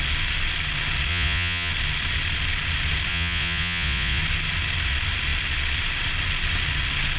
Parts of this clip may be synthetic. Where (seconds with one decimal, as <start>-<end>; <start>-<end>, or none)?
1.1-1.7; 3.1-4.2